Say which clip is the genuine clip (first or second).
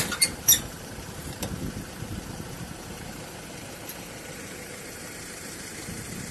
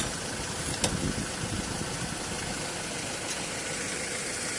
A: second